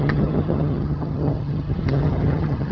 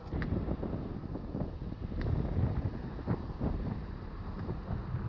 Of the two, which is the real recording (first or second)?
second